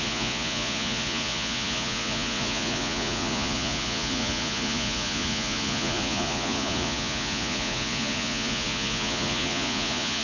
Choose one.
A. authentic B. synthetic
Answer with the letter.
B